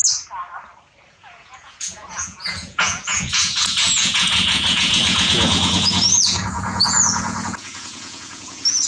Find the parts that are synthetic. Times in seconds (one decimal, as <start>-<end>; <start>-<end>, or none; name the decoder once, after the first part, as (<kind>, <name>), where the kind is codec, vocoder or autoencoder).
1.1-8.9 (vocoder, Vocos)